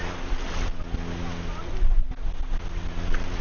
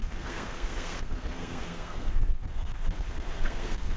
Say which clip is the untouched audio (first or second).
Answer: first